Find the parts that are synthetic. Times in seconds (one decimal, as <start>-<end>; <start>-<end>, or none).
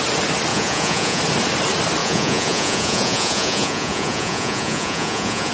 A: 0.5-1.2; 2.0-5.5